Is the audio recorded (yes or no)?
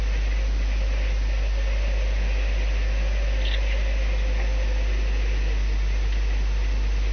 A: yes